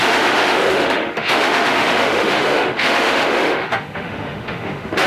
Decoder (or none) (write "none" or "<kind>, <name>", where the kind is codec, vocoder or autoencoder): autoencoder, DAC-VAE